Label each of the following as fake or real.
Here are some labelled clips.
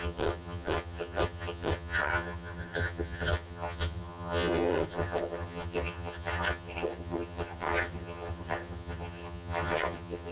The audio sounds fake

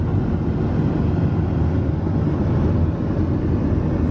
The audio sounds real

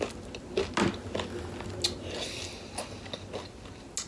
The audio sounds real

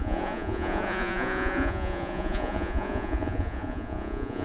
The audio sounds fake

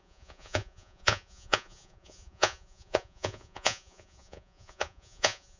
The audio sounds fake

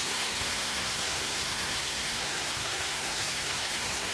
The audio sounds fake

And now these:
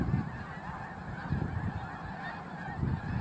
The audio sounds real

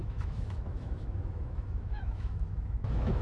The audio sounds fake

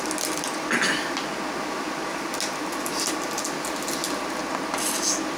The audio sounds real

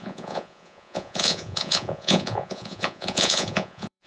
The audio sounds fake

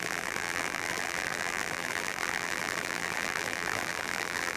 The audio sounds fake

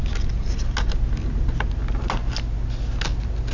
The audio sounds real